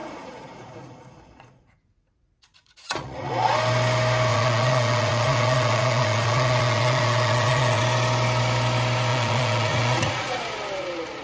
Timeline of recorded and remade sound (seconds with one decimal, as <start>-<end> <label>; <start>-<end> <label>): 0.0-3.3 remade; 3.3-4.3 recorded; 4.3-7.8 remade; 7.8-9.1 recorded; 9.1-10.4 remade; 10.4-11.2 recorded